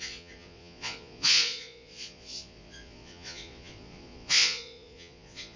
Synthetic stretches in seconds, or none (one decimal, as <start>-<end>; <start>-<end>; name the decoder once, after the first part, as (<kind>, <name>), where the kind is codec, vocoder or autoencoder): 0.0-5.6 (vocoder, Vocos)